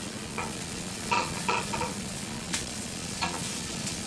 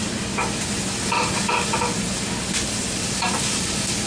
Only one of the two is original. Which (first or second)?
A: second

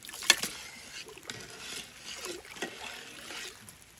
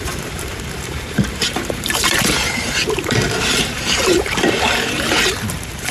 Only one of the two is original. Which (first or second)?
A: first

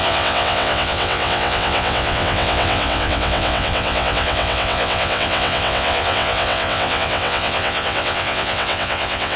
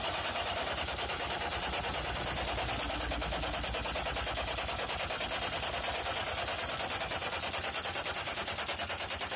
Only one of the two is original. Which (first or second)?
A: second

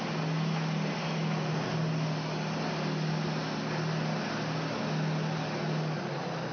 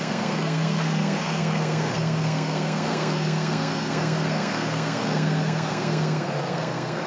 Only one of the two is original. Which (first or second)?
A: first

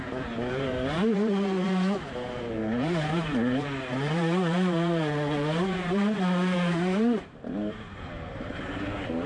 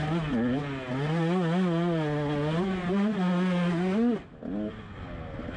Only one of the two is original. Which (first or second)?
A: second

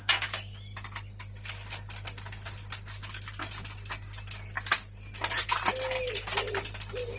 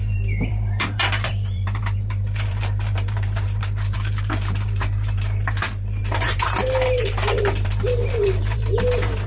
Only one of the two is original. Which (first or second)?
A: first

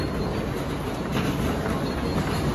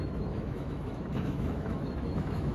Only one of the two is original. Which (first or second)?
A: first